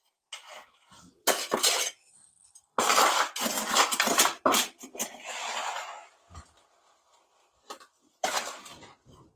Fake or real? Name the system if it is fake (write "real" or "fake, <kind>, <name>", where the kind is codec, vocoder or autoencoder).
real